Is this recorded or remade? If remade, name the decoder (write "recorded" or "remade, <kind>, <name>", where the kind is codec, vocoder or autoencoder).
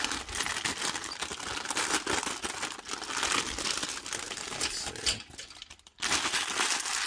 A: recorded